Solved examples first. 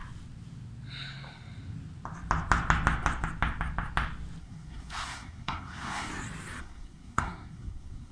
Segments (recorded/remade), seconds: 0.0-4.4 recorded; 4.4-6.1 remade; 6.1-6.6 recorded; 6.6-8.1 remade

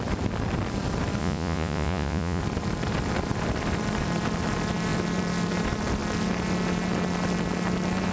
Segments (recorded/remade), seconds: 0.0-1.2 recorded; 1.2-2.4 remade; 2.4-8.1 recorded

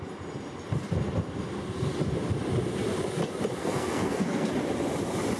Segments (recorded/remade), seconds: 0.0-3.6 recorded; 3.6-4.5 remade; 4.5-5.4 recorded

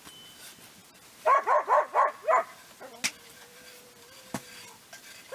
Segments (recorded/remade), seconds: 0.0-5.3 recorded

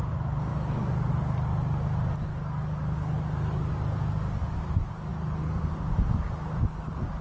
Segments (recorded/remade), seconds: 0.0-0.5 recorded; 0.5-1.1 remade; 1.1-2.3 recorded; 2.3-3.7 remade; 3.7-7.2 recorded

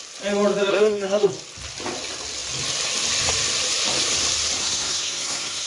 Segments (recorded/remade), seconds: 0.0-0.7 recorded; 0.7-1.3 remade; 1.3-4.6 recorded; 4.6-5.7 remade

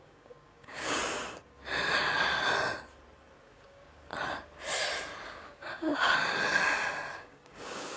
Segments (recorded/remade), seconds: 0.0-1.0 remade; 1.0-3.4 recorded; 3.4-4.1 remade; 4.1-5.3 recorded; 5.3-5.9 remade; 5.9-7.1 recorded; 7.1-8.0 remade